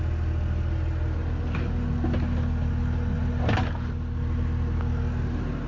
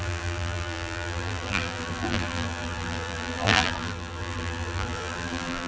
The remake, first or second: second